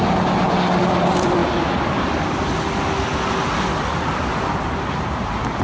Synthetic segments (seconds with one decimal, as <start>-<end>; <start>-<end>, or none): none